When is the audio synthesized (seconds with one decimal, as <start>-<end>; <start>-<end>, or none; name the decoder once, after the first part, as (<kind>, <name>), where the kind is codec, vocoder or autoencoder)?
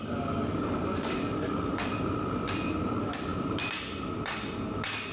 0.0-5.1 (vocoder, BigVGAN v2)